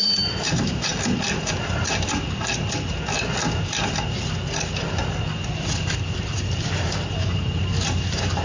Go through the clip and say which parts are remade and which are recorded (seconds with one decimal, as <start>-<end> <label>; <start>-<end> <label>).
0.0-0.9 remade; 0.9-4.4 recorded; 4.4-5.0 remade; 5.0-6.3 recorded; 6.3-8.4 remade